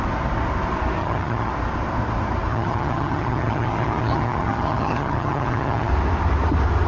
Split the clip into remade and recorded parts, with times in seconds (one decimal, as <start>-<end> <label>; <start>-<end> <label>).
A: 0.0-1.0 recorded; 1.0-1.5 remade; 1.5-2.5 recorded; 2.5-5.9 remade; 5.9-6.9 recorded